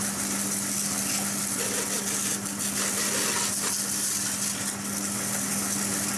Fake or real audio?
real